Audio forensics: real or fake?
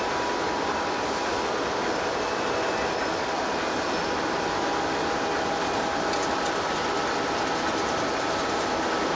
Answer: real